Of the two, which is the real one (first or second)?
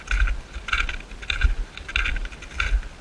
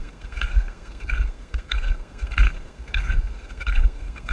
first